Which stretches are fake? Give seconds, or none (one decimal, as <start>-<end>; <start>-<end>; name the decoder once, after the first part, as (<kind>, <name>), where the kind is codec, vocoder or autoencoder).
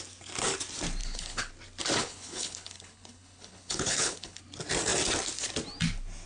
1.0-1.5 (codec, HILCodec); 2.0-4.4